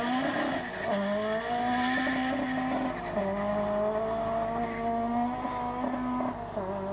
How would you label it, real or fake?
real